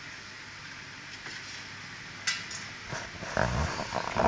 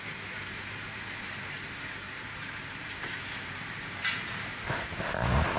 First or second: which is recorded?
first